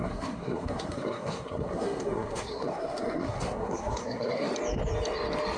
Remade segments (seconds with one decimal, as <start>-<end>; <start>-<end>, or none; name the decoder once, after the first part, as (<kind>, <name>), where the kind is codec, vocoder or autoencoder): 0.0-4.5 (codec, SNAC)